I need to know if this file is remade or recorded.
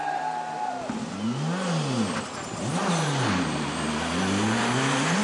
recorded